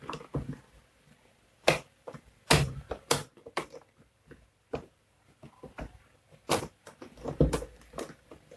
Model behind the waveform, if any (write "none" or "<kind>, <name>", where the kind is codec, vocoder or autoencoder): vocoder, BigVGAN v2